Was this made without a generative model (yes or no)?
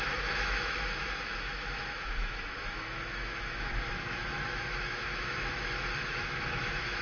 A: no